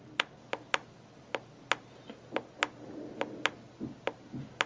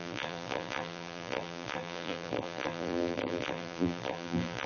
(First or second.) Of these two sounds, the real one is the first